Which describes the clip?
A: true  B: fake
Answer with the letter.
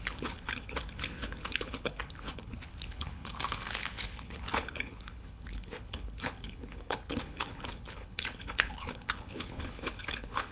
B